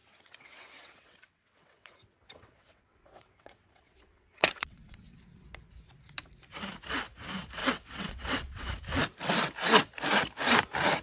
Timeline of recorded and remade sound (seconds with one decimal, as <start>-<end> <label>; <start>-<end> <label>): 0.0-5.2 remade; 5.2-7.6 recorded; 7.6-8.7 remade; 8.7-11.0 recorded